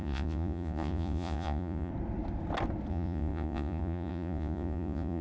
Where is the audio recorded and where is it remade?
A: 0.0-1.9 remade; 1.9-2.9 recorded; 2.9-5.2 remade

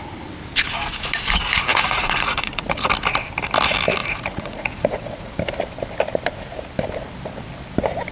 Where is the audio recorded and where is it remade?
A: 0.0-1.7 recorded; 1.7-2.9 remade; 2.9-4.0 recorded; 4.0-5.4 remade; 5.4-8.1 recorded

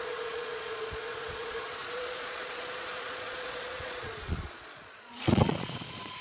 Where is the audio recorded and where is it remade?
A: 0.0-6.2 remade

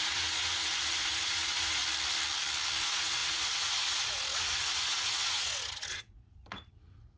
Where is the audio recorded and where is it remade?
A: 0.0-1.8 remade; 1.8-2.8 recorded; 2.8-7.2 remade